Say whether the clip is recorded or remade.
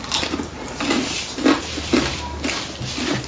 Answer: recorded